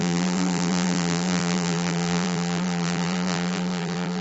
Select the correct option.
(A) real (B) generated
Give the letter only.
B